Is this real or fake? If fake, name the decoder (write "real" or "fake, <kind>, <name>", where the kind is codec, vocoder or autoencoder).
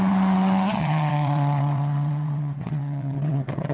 fake, vocoder, WaveNeXt